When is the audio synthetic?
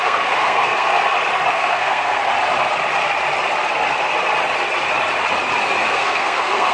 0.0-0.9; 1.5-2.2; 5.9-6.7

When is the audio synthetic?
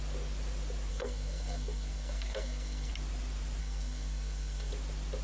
0.9-2.9; 3.6-4.7